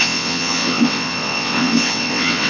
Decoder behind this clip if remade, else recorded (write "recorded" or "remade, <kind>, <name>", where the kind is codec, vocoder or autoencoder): remade, vocoder, WaveNeXt